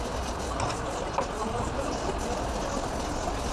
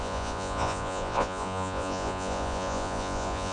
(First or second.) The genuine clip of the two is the first